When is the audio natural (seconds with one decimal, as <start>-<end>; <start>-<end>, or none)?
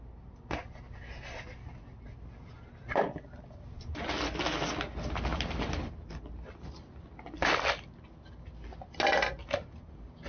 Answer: 0.0-10.3